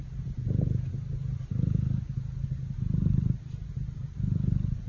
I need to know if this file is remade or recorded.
recorded